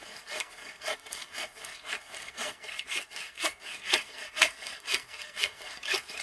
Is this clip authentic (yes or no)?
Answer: no